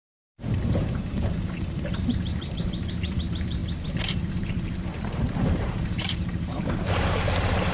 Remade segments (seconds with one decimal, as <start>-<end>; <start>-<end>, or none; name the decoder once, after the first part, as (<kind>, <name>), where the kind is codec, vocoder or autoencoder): 0.0-3.6 (vocoder, BigVGAN v2); 4.3-7.7